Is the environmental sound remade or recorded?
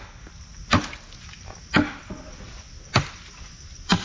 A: recorded